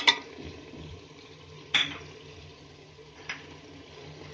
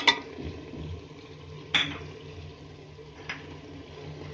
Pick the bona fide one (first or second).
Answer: second